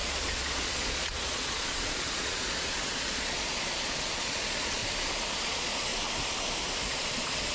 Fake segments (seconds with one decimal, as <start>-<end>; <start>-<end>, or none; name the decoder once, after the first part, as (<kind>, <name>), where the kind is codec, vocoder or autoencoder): 0.0-4.8 (vocoder, Vocos); 5.3-5.9; 6.9-7.5